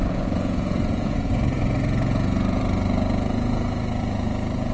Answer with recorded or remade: remade